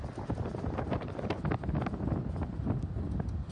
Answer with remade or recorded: recorded